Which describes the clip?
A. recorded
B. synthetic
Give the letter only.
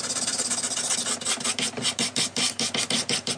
A